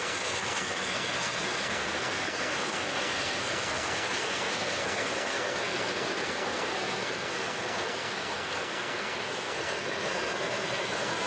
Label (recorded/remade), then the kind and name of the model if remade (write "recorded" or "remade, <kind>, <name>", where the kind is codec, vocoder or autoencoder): remade, codec, SNAC